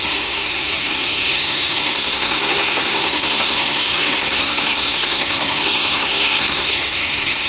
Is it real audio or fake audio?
fake